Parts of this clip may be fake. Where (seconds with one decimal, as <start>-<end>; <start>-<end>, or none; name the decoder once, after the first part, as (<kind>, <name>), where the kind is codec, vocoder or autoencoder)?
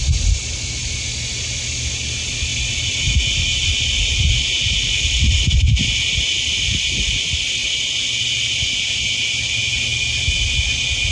none